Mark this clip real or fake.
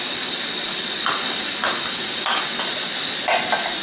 real